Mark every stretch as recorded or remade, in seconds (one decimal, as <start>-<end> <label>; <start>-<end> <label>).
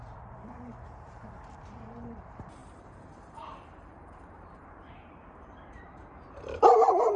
0.0-7.2 remade